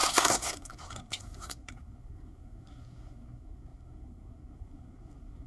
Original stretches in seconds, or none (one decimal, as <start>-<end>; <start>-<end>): none